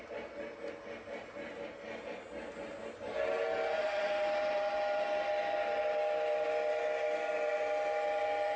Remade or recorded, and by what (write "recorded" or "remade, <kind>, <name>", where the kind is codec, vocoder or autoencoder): recorded